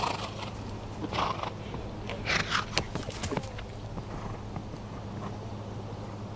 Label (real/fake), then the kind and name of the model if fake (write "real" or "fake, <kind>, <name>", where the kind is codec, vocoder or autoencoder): real